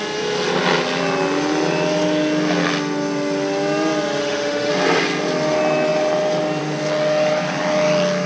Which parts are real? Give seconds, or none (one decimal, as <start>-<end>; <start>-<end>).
0.0-4.2; 4.7-8.3